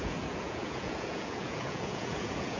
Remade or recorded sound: remade